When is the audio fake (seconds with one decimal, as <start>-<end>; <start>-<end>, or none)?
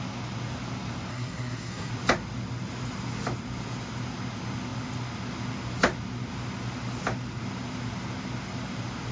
1.1-1.9